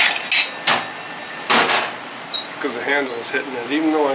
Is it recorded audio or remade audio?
recorded